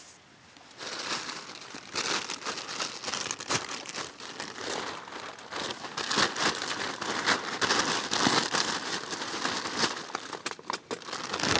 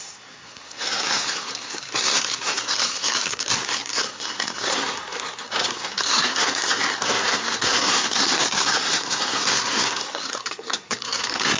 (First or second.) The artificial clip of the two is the second